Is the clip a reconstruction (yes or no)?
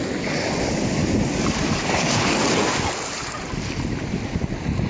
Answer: no